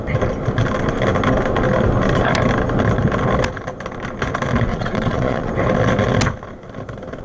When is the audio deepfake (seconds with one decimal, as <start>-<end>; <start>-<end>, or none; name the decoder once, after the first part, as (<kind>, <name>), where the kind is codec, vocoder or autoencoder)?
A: 4.7-5.5 (vocoder, Vocos)